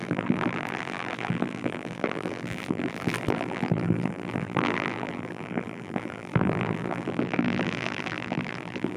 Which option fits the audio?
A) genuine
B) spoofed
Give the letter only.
B